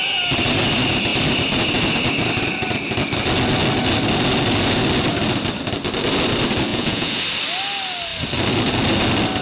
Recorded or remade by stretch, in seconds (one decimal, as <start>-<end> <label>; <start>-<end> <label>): 0.0-6.7 recorded; 6.7-7.2 remade; 7.2-9.4 recorded